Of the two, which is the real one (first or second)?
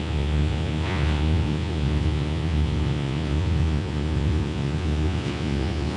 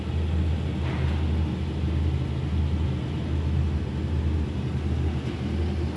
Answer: second